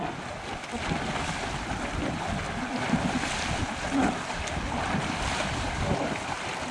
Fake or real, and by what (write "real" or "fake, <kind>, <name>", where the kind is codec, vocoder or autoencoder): real